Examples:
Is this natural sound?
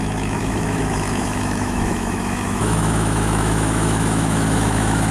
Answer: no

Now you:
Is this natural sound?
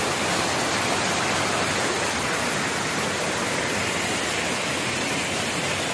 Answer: yes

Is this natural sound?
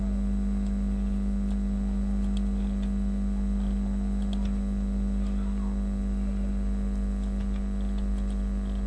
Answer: yes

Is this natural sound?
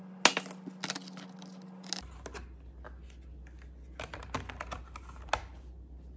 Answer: yes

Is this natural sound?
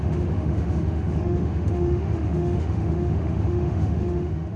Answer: no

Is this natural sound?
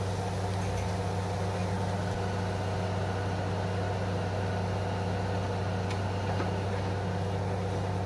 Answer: yes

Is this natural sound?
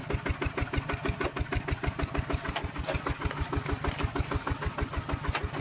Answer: yes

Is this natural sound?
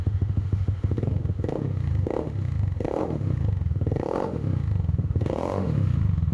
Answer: no